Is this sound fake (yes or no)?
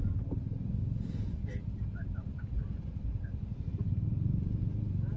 yes